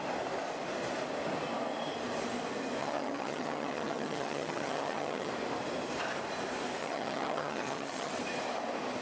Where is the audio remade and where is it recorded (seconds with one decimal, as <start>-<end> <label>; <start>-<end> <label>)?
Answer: 0.0-2.8 recorded; 2.8-5.3 remade; 5.3-6.8 recorded; 6.8-8.1 remade; 8.1-9.0 recorded